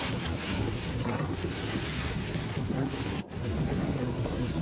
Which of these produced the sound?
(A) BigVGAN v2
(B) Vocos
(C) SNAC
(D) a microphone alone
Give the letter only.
C